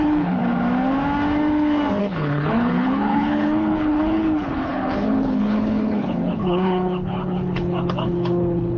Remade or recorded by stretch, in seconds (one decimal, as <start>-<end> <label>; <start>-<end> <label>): 0.0-0.4 remade; 0.4-2.0 recorded; 2.0-8.8 remade